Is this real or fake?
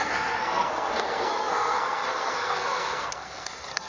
fake